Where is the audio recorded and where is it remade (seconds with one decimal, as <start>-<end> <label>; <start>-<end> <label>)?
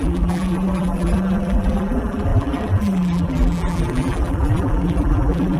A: 0.0-5.6 remade